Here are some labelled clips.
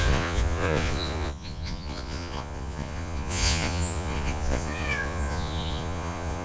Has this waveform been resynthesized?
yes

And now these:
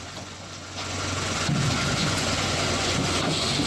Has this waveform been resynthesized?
yes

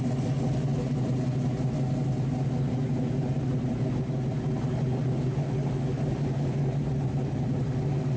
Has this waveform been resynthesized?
no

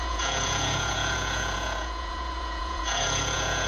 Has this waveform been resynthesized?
yes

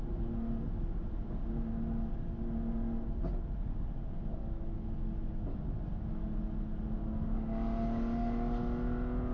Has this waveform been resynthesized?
no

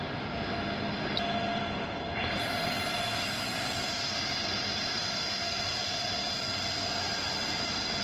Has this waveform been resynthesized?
no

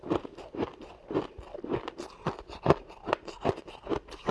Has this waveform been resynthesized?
no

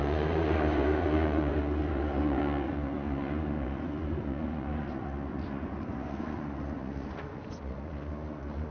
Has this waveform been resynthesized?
yes